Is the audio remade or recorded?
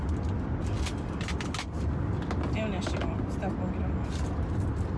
recorded